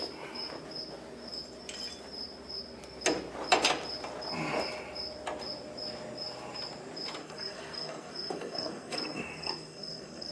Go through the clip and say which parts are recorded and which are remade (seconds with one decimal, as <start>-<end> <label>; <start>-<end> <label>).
0.0-7.2 recorded; 7.2-10.3 remade